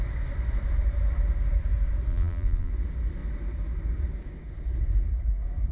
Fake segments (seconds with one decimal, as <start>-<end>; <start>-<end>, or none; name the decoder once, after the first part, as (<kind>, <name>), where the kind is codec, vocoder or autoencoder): 2.1-2.7 (vocoder, BigVGAN v2)